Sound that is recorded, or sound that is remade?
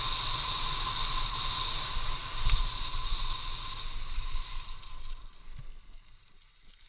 recorded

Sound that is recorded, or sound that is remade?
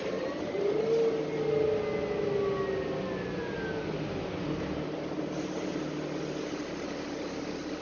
recorded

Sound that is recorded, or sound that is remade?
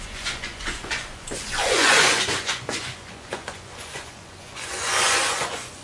remade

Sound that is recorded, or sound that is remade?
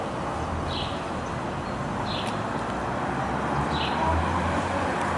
recorded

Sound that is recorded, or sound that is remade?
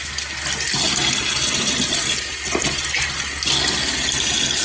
recorded